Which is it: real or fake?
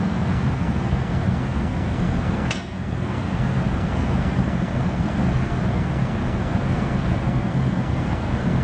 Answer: fake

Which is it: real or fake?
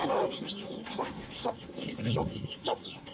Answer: fake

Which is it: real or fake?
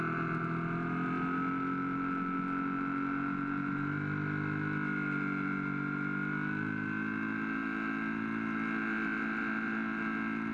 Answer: real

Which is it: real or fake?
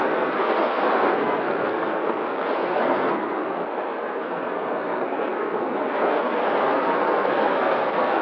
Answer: fake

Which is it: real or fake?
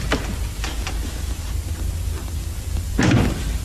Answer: real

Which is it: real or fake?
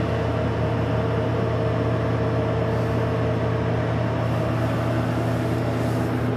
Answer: real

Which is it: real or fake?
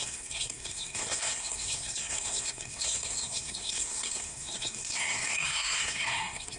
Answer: fake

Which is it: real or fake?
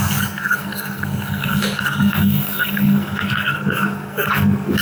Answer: fake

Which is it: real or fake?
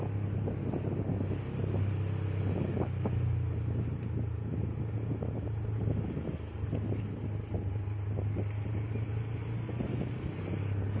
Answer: real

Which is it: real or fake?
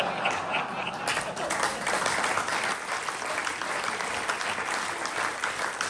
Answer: real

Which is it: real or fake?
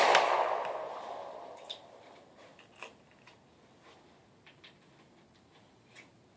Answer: real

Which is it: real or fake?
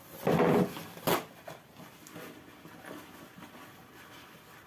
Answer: real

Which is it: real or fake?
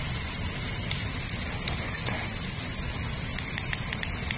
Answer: real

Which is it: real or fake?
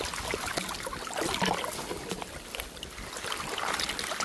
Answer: real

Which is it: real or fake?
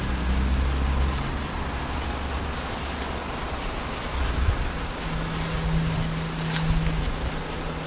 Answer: real